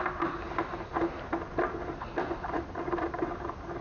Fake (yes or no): no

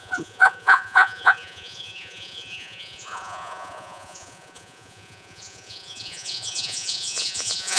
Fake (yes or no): yes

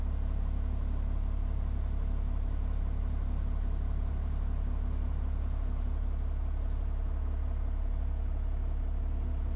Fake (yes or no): no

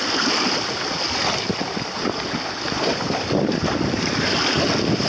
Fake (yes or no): no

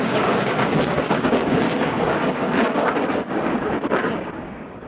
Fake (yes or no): yes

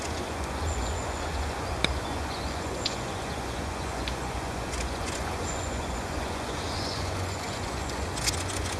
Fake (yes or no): yes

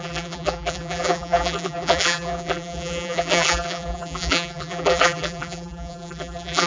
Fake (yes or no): yes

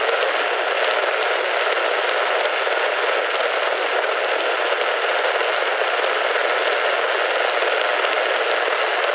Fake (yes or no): no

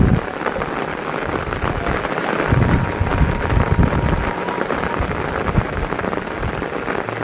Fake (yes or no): no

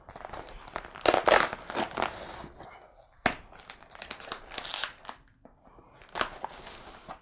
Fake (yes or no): no